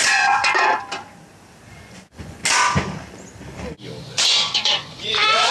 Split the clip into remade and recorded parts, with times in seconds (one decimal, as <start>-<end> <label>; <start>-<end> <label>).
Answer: 0.0-0.7 remade; 0.7-1.7 recorded; 1.7-2.4 remade; 2.4-4.0 recorded; 4.0-5.5 remade